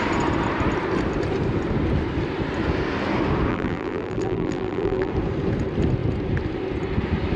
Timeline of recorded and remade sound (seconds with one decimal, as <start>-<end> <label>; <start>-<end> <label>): 0.0-3.5 recorded; 3.5-5.1 remade; 5.1-7.4 recorded